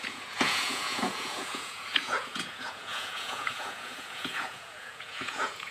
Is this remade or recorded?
remade